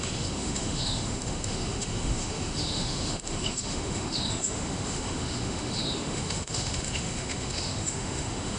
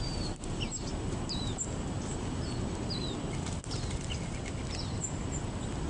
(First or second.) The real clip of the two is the second